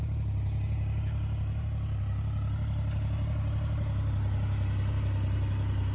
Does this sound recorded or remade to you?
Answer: recorded